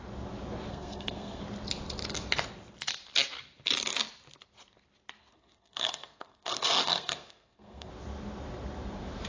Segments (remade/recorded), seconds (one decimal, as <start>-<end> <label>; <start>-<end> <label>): 0.0-0.7 recorded; 0.7-1.4 remade; 1.4-5.2 recorded; 5.2-7.9 remade; 7.9-9.3 recorded